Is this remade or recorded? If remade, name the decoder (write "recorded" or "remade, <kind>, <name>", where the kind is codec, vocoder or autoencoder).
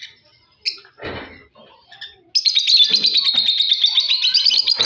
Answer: recorded